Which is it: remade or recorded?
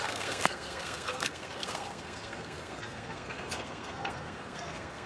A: remade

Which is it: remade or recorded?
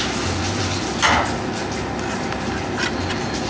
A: recorded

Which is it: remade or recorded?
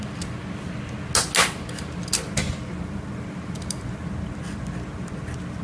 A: recorded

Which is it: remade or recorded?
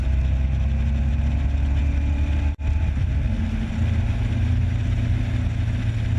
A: recorded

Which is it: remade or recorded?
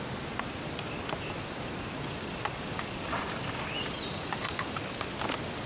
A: recorded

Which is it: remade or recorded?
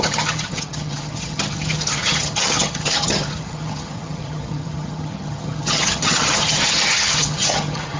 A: remade